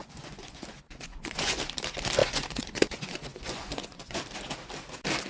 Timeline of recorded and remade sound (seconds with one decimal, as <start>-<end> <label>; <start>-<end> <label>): 0.0-1.6 remade; 1.6-2.2 recorded; 2.2-4.2 remade; 4.2-5.3 recorded